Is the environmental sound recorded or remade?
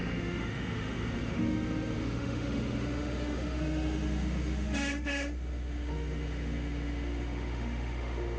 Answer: remade